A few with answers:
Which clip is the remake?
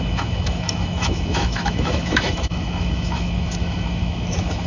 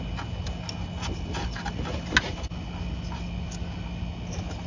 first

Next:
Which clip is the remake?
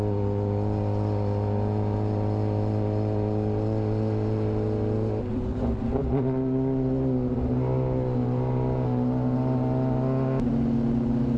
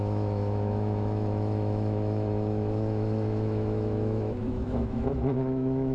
second